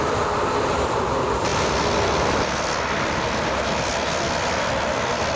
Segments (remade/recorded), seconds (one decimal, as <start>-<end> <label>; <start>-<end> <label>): 0.0-5.4 recorded